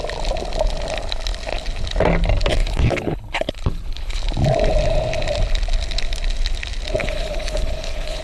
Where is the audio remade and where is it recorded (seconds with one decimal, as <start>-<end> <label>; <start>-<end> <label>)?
0.0-2.6 recorded; 2.6-4.2 remade; 4.2-7.0 recorded; 7.0-8.2 remade